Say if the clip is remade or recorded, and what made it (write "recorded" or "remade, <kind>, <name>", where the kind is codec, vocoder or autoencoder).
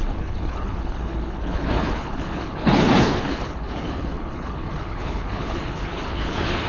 remade, codec, HILCodec